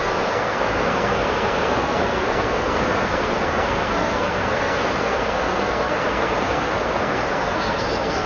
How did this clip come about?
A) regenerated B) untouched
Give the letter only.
A